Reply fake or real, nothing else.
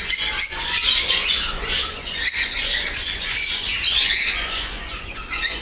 fake